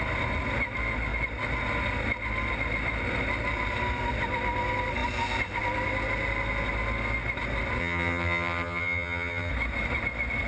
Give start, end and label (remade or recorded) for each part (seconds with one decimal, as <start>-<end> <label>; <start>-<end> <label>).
0.0-7.8 recorded; 7.8-9.5 remade; 9.5-10.5 recorded